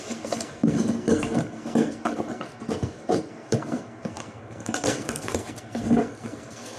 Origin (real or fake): fake